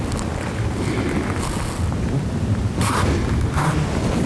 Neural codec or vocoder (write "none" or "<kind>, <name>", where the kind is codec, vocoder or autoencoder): none